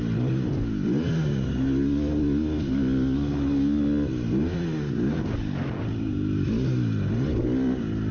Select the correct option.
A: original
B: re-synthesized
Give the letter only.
A